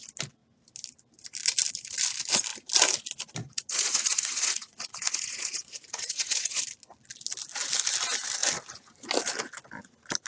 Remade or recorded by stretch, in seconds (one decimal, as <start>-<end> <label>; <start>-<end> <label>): 0.0-3.4 recorded; 3.4-6.6 remade; 6.6-10.3 recorded